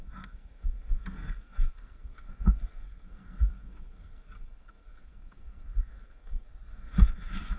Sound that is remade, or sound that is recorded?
remade